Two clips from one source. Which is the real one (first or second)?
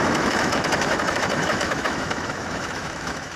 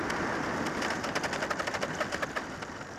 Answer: second